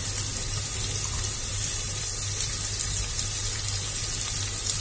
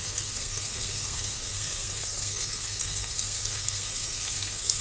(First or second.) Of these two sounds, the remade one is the second